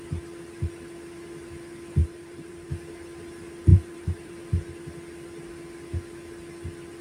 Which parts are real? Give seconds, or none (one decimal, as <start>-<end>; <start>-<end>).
0.0-2.0; 2.7-3.7; 4.3-7.0